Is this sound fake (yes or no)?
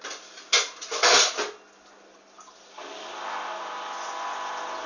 no